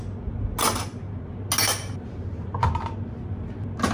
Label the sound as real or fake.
real